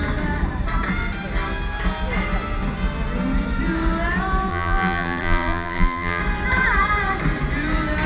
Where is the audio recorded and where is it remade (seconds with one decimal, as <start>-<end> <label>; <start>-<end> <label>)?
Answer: 0.0-4.5 recorded; 4.5-6.2 remade; 6.2-8.1 recorded